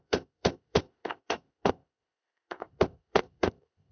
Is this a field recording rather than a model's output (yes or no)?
no